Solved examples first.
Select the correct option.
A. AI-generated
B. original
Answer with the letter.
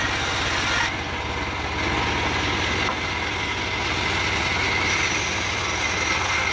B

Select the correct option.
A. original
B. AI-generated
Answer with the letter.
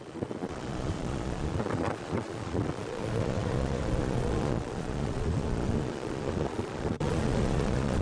B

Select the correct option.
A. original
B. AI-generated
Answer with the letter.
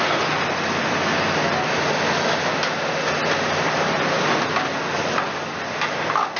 A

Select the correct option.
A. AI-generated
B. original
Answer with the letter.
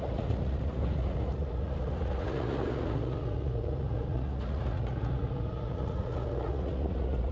A